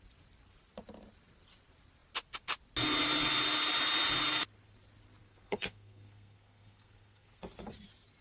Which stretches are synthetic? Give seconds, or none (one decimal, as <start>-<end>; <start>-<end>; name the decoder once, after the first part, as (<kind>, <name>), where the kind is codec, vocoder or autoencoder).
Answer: 5.2-7.4 (codec, SNAC)